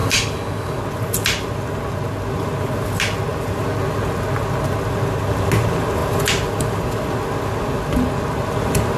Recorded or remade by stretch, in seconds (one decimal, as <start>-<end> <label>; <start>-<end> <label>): 0.0-0.8 remade; 0.8-9.0 recorded